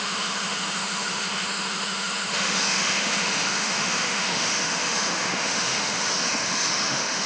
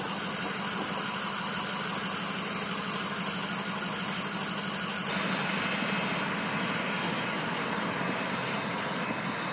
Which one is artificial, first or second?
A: first